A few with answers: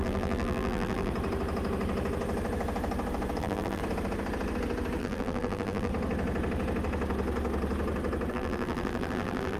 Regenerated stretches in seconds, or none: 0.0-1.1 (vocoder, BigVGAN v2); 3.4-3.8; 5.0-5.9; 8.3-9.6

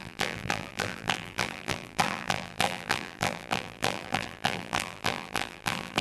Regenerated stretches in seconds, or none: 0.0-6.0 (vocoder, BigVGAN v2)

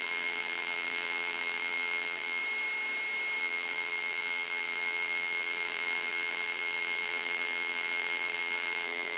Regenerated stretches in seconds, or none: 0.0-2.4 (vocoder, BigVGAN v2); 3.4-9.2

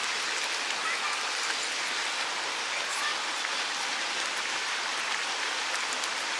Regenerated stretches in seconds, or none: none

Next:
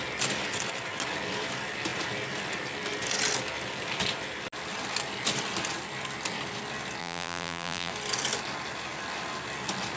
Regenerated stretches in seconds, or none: 7.0-7.9 (vocoder, BigVGAN v2)